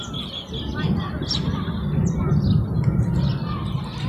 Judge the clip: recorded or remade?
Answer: recorded